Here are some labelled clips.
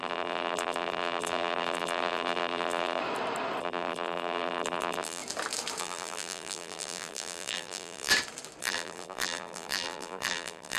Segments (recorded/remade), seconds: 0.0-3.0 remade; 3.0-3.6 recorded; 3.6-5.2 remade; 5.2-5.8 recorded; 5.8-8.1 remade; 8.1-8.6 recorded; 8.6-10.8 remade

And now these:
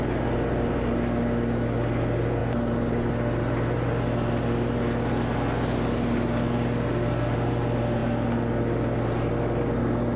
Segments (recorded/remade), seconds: 0.0-10.2 recorded

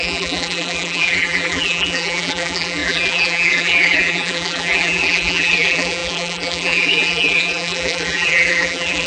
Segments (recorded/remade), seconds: 0.0-9.1 remade

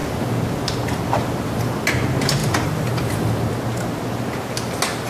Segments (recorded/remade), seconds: 0.0-2.4 recorded; 2.4-3.3 remade; 3.3-5.1 recorded

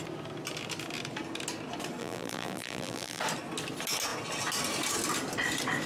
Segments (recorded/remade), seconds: 0.0-2.0 recorded; 2.0-3.2 remade; 3.2-5.9 recorded

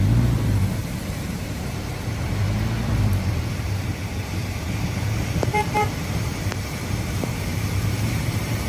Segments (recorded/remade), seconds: 0.0-2.4 remade; 2.4-3.5 recorded; 3.5-8.7 remade

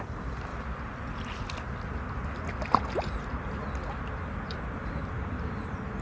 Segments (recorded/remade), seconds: 0.0-6.0 recorded

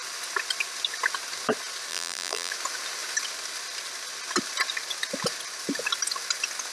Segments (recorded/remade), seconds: 0.0-1.9 recorded; 1.9-2.5 remade; 2.5-6.7 recorded